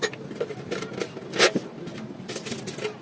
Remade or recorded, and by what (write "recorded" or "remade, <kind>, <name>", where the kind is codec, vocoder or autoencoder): recorded